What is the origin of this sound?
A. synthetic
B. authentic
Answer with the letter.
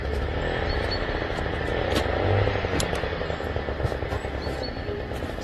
B